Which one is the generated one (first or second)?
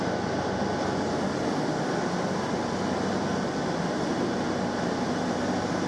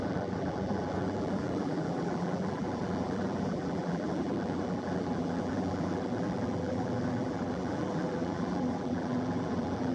second